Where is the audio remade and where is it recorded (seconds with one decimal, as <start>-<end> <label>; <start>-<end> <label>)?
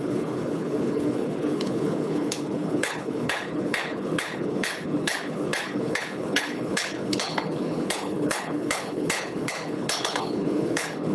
0.0-11.1 remade